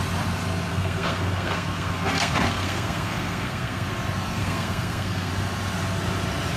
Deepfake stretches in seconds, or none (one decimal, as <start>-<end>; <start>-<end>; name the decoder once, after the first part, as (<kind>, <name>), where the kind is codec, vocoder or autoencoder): 0.7-3.9 (codec, SNAC); 4.4-5.3

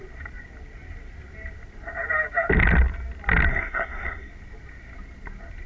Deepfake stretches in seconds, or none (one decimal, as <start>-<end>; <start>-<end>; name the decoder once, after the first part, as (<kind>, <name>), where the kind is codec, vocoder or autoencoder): 3.5-4.3 (codec, SNAC)

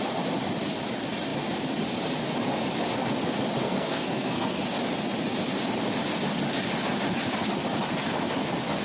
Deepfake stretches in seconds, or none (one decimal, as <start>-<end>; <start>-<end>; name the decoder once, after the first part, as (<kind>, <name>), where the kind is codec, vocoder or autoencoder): 3.6-4.6 (codec, SNAC)